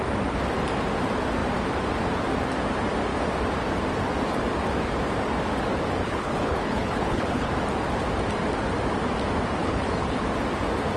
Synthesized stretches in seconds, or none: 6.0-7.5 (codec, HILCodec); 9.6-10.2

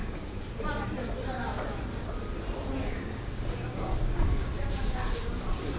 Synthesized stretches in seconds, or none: 0.0-0.6 (codec, DAC); 2.8-4.5